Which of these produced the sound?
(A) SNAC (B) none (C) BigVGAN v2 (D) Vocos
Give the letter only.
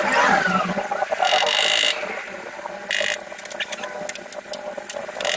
B